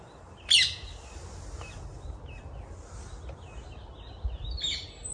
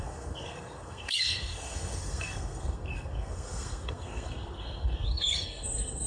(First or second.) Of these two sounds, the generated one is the second